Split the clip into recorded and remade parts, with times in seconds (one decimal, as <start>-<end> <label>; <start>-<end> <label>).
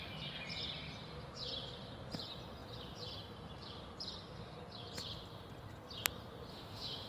0.0-6.5 recorded; 6.5-7.1 remade